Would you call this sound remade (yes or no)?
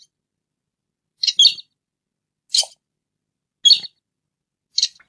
no